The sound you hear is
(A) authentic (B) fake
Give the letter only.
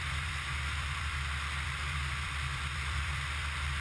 B